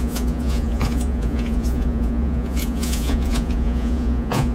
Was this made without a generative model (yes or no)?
no